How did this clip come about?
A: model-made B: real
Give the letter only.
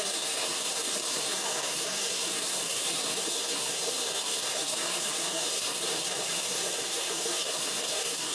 A